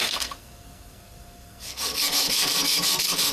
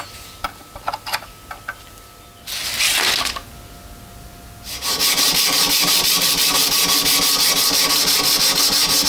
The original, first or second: second